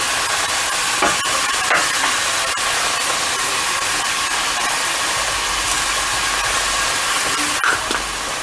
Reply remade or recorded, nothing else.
recorded